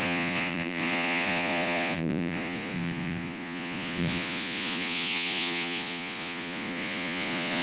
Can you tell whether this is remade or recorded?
remade